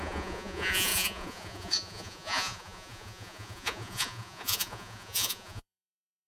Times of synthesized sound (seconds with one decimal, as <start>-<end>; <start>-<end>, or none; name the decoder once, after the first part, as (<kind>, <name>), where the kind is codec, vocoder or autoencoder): 0.0-6.3 (vocoder, Vocos)